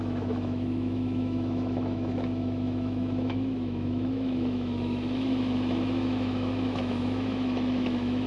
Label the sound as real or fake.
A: fake